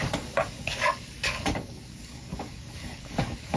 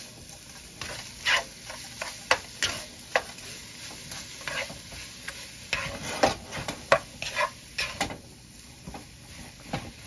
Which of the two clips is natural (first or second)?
second